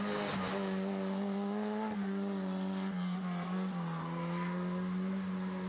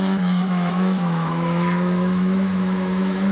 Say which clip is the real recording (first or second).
first